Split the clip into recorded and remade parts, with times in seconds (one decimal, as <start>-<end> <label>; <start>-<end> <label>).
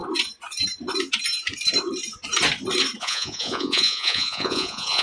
0.0-3.0 recorded; 3.0-5.0 remade